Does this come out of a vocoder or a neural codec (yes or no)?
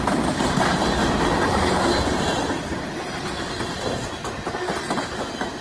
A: no